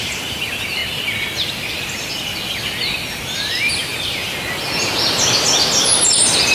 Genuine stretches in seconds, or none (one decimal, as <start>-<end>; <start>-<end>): 0.8-2.6